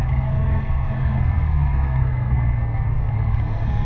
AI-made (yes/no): yes